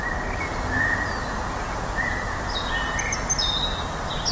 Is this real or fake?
real